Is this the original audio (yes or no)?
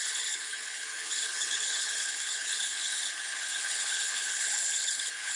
no